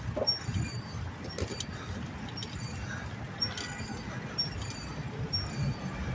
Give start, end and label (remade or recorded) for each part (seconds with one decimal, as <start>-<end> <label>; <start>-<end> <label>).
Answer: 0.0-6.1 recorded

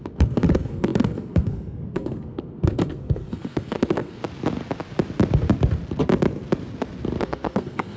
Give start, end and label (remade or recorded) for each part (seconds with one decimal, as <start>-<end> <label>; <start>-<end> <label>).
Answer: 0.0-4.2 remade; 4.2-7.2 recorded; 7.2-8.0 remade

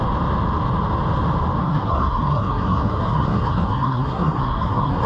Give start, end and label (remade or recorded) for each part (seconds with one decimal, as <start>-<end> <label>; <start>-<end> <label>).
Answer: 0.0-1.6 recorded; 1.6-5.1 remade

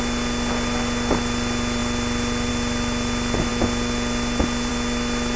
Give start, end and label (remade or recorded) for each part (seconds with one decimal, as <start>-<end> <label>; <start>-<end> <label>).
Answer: 0.0-5.4 recorded

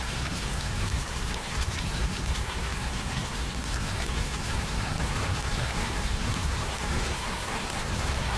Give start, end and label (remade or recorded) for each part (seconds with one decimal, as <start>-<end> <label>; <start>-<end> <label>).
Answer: 0.0-8.4 remade

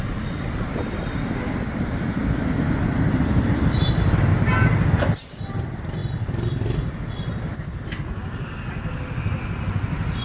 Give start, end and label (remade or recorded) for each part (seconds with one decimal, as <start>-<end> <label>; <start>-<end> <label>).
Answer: 0.0-10.2 recorded

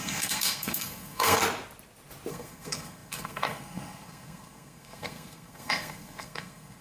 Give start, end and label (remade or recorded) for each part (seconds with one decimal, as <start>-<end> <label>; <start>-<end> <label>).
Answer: 0.0-1.4 remade; 1.4-2.3 recorded; 2.3-6.8 remade

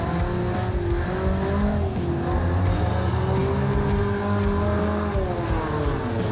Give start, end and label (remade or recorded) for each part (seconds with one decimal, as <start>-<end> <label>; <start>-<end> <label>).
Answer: 0.0-6.3 recorded